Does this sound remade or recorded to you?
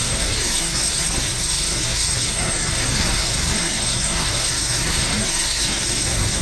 remade